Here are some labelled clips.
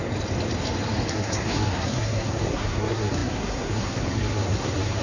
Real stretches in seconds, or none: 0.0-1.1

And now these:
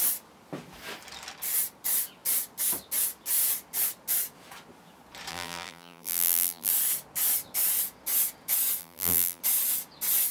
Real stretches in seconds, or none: 0.0-5.3; 6.7-8.8; 9.4-10.3